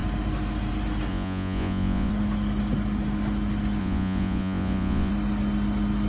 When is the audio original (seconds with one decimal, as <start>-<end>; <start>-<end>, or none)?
0.0-1.1; 2.1-3.8; 5.1-6.1